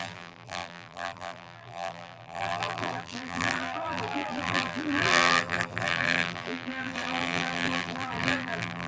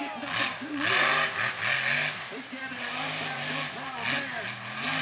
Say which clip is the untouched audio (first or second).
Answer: second